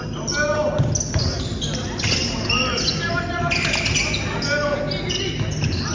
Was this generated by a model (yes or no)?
no